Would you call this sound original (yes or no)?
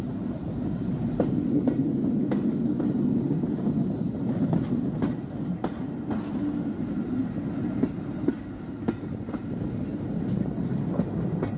yes